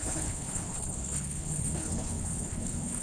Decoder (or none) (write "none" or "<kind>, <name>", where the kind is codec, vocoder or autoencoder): codec, HILCodec